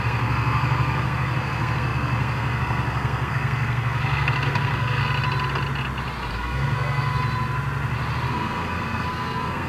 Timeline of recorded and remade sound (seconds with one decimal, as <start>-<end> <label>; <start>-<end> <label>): 0.0-5.0 remade; 5.0-6.3 recorded; 6.3-7.2 remade; 7.2-8.3 recorded; 8.3-9.7 remade